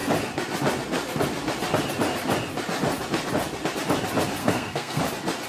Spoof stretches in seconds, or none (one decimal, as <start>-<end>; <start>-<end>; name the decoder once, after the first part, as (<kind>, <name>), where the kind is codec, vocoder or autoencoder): 4.4-5.0 (codec, SNAC)